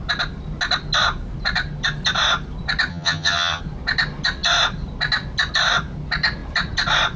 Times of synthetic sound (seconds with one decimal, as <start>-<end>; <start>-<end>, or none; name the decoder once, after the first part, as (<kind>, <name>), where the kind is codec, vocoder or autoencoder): 2.9-3.6 (vocoder, HiFi-GAN)